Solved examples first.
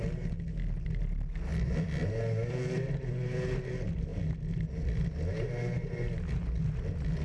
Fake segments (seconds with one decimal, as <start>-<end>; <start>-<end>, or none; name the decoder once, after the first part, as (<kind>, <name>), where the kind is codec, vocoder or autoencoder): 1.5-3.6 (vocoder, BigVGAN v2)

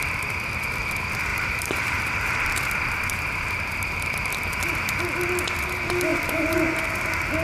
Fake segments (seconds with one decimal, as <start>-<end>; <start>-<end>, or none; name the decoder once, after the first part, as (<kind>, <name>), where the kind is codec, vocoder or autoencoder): 1.3-2.0 (vocoder, BigVGAN v2); 6.1-6.6

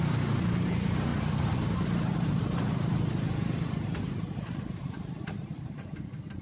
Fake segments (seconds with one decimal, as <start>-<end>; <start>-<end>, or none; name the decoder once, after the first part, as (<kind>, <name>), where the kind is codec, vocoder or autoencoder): 0.0-6.4 (vocoder, BigVGAN v2)

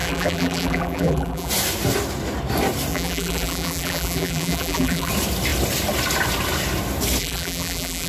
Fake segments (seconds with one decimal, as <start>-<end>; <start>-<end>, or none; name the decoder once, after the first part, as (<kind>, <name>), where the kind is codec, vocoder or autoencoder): 0.0-1.5 (vocoder, BigVGAN v2); 2.9-5.1; 7.2-8.1

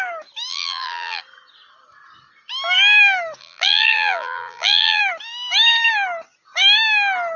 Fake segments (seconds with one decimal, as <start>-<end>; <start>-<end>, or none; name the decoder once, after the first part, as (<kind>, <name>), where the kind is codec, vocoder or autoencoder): 0.5-1.2 (vocoder, BigVGAN v2); 3.4-5.0

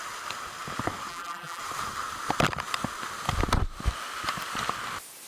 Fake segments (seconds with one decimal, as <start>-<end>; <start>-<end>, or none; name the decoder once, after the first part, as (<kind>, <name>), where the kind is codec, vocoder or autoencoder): 1.1-1.6 (vocoder, BigVGAN v2)

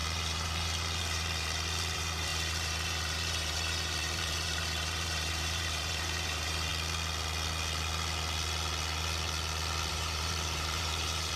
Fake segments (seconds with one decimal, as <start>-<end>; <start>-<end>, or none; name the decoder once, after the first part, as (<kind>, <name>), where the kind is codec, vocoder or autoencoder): 0.0-6.7 (vocoder, BigVGAN v2); 9.9-11.4